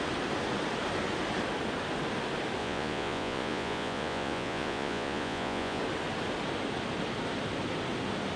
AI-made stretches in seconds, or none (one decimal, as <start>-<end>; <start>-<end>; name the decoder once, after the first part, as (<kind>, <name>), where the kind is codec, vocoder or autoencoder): 2.6-5.8 (vocoder, Vocos)